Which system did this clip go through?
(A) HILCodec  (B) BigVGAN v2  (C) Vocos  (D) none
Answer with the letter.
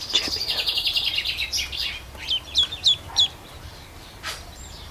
B